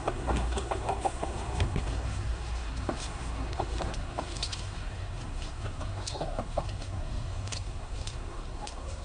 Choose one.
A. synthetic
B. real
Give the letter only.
A